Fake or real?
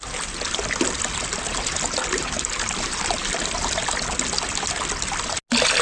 real